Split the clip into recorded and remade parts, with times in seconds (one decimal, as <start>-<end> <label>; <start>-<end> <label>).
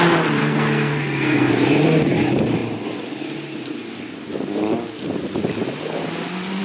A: 0.0-0.4 recorded; 0.4-1.5 remade; 1.5-6.6 recorded